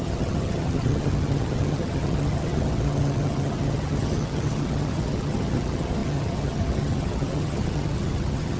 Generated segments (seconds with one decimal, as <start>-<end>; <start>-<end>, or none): 0.0-8.6